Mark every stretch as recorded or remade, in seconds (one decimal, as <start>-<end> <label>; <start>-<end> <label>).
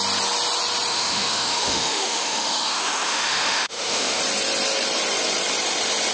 0.0-0.9 recorded; 0.9-4.2 remade; 4.2-6.1 recorded